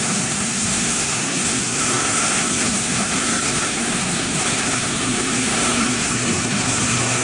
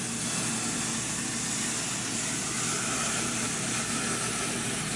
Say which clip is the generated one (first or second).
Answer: first